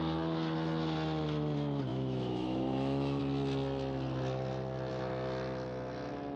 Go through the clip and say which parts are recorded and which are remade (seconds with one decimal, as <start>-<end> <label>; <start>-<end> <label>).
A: 0.0-1.9 recorded; 1.9-3.2 remade; 3.2-6.4 recorded